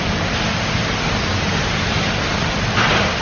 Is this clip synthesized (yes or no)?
no